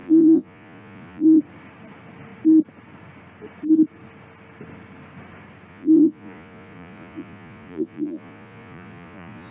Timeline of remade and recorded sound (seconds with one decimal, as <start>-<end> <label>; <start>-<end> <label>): 0.0-1.4 remade; 1.4-5.7 recorded; 5.7-9.5 remade